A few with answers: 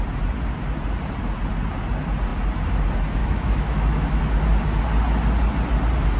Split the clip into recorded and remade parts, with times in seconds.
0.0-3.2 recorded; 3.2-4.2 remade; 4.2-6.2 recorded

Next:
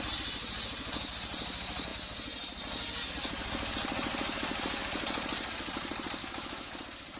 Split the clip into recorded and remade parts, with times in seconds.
0.0-6.2 recorded; 6.2-6.8 remade; 6.8-7.2 recorded

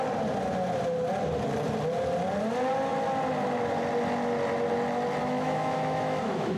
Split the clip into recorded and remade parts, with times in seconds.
0.0-5.2 recorded; 5.2-6.6 remade

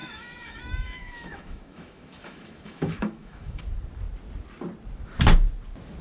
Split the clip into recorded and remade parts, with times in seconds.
0.0-3.6 remade; 3.6-6.0 recorded

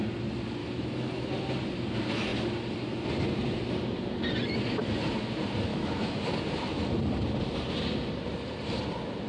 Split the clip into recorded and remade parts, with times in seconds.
0.0-0.6 recorded; 0.6-1.3 remade; 1.3-5.7 recorded; 5.7-6.2 remade; 6.2-9.3 recorded

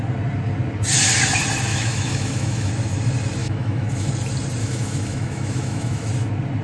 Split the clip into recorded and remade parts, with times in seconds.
0.0-1.7 recorded; 1.7-2.7 remade; 2.7-3.4 recorded; 3.4-4.1 remade; 4.1-4.6 recorded; 4.6-6.1 remade; 6.1-6.6 recorded

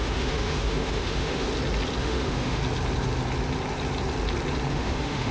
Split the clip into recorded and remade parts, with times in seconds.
0.0-1.5 remade; 1.5-2.0 recorded; 2.0-2.6 remade; 2.6-4.7 recorded; 4.7-5.3 remade